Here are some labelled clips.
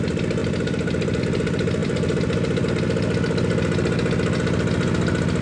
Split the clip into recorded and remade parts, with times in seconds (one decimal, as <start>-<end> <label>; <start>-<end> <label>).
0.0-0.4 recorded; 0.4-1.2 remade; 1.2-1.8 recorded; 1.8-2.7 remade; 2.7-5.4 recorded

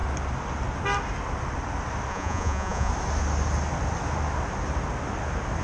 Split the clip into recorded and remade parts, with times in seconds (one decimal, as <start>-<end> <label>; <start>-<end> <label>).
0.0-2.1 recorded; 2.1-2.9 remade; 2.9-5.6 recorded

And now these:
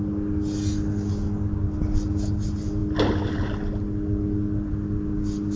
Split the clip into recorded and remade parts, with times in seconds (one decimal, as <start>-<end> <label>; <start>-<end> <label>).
0.0-5.6 recorded

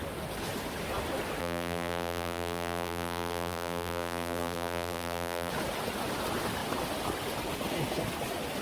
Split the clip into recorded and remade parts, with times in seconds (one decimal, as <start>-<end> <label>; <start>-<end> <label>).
0.0-1.4 recorded; 1.4-5.5 remade; 5.5-8.6 recorded

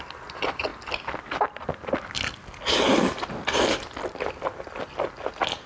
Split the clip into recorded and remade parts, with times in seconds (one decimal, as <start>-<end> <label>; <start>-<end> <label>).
0.0-5.7 recorded

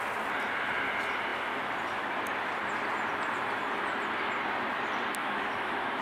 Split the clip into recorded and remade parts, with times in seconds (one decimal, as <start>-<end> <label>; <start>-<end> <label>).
0.0-5.2 recorded; 5.2-6.0 remade

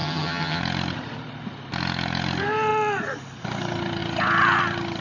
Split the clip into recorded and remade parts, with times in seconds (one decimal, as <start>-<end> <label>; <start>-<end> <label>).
0.0-0.6 remade; 0.6-5.0 recorded

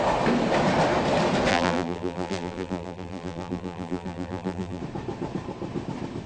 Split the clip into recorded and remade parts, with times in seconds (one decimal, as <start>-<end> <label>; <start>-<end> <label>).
0.0-1.5 recorded; 1.5-4.8 remade; 4.8-6.3 recorded